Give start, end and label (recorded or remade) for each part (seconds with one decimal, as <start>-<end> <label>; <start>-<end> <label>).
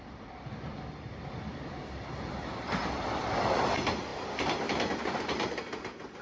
0.0-6.2 recorded